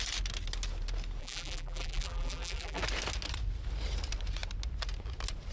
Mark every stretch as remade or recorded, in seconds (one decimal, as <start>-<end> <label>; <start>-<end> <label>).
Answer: 0.0-1.2 recorded; 1.2-2.8 remade; 2.8-5.5 recorded